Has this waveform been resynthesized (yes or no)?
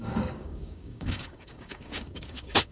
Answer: yes